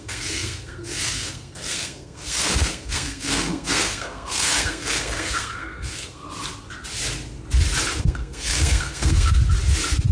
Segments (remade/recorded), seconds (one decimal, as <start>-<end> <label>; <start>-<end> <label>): 0.0-6.2 remade; 6.2-8.0 recorded; 8.0-9.4 remade; 9.4-10.1 recorded